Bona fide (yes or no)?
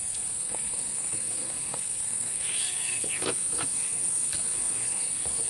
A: no